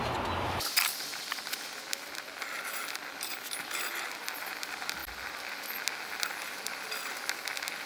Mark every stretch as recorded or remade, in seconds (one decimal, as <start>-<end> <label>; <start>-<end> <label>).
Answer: 0.0-7.9 recorded